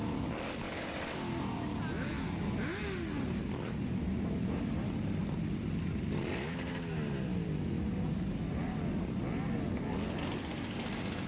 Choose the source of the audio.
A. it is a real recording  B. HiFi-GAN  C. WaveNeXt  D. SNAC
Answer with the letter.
A